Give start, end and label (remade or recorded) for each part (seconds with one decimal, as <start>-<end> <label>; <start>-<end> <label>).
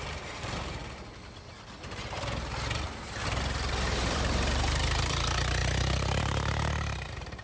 0.0-0.8 remade; 0.8-3.7 recorded; 3.7-7.4 remade